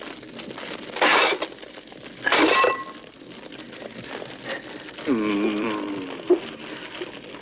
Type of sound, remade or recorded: recorded